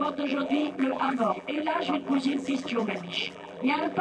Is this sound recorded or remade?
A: remade